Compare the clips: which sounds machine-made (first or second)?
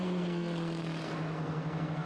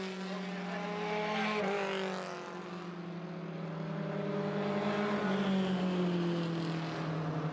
first